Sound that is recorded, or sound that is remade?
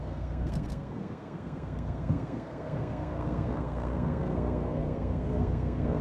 remade